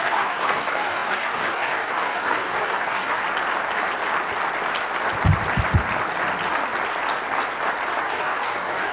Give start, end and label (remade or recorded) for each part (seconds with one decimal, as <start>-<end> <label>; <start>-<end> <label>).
0.0-3.2 remade; 3.2-8.0 recorded; 8.0-8.9 remade